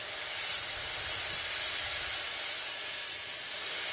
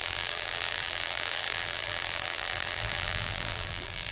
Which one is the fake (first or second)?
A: second